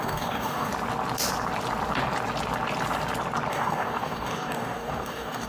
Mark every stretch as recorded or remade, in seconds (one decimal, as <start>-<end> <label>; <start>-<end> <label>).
0.0-0.7 remade; 0.7-3.5 recorded; 3.5-5.5 remade